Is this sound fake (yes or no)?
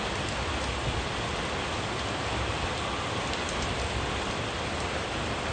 no